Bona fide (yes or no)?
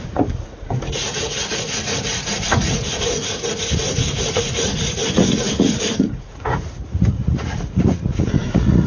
no